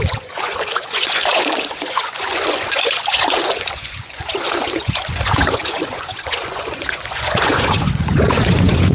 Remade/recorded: remade